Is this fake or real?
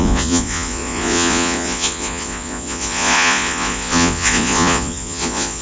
fake